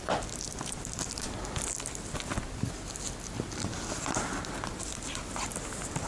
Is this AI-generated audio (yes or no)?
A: yes